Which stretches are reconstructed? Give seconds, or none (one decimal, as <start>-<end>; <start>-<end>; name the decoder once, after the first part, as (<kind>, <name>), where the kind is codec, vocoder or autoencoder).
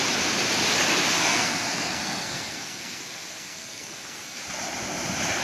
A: 1.2-4.4 (codec, SNAC)